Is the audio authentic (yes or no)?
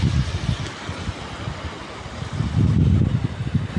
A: yes